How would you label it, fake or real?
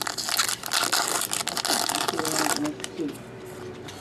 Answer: real